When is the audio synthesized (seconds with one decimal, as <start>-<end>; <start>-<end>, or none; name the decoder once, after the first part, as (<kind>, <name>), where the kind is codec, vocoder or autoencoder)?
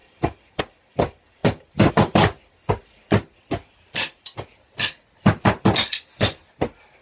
0.0-0.6 (vocoder, BigVGAN v2); 1.4-1.9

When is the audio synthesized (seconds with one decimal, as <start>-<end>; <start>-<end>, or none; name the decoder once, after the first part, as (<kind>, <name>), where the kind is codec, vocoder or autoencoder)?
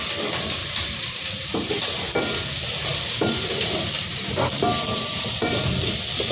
0.6-2.0 (vocoder, BigVGAN v2); 2.9-5.8